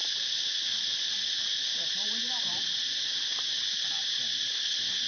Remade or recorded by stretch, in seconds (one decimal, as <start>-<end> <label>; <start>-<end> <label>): 0.0-5.1 recorded